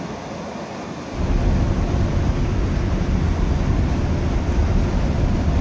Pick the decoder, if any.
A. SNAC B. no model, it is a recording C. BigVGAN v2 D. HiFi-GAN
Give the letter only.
B